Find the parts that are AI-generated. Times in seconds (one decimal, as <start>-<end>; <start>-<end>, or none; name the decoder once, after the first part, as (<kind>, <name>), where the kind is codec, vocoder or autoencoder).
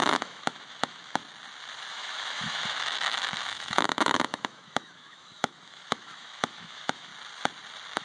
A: 0.0-1.2 (autoencoder, DAC-VAE); 1.9-7.1